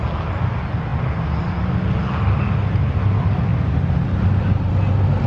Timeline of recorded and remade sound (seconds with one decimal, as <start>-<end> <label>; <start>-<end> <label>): 0.0-5.3 recorded